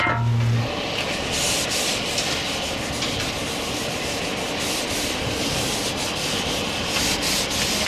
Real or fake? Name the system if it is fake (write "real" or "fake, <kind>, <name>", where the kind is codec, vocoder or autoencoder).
real